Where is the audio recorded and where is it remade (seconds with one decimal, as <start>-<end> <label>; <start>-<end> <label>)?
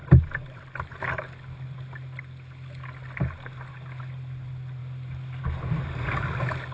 0.0-6.7 recorded